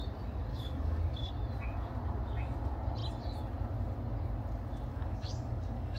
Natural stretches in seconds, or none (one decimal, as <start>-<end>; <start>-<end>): 0.0-0.5; 1.3-4.9